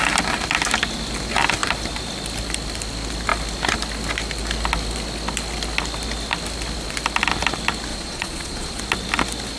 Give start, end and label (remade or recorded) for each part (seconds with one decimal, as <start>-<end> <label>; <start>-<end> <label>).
0.0-7.9 recorded; 7.9-8.8 remade; 8.8-9.6 recorded